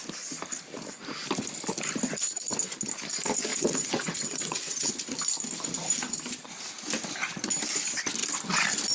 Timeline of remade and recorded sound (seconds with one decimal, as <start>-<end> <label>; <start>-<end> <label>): 0.0-3.5 recorded; 3.5-4.9 remade; 4.9-8.9 recorded